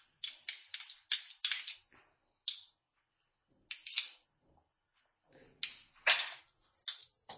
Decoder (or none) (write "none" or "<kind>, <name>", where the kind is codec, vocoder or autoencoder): none